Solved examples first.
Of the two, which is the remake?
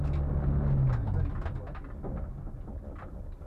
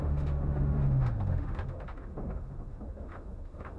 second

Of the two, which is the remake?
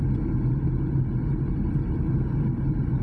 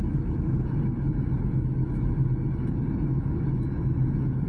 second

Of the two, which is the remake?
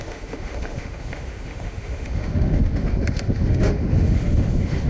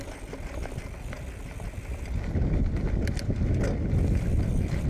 first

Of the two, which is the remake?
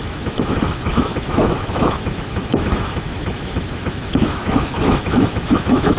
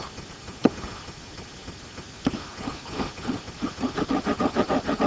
first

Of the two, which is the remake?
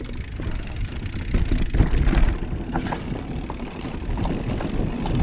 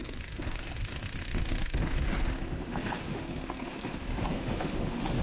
second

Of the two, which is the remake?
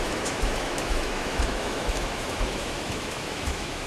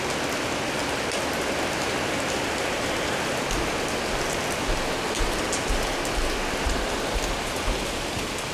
first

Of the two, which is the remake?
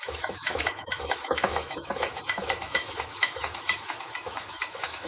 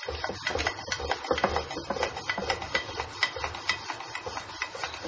first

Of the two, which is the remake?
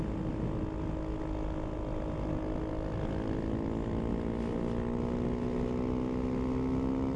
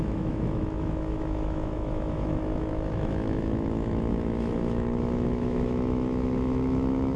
second